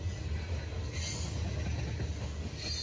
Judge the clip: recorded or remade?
recorded